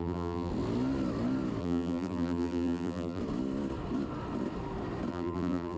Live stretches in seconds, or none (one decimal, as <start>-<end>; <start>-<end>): 0.5-1.6; 3.2-5.1